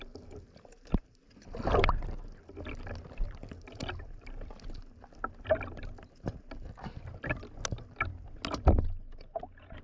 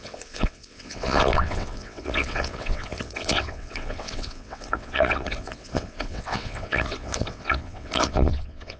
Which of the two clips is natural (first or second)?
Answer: first